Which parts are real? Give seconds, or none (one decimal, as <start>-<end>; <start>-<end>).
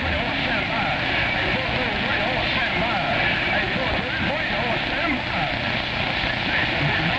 0.0-7.2